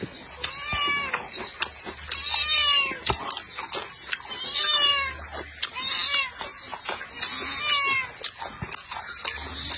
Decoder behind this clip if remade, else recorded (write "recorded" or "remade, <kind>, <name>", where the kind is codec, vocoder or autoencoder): recorded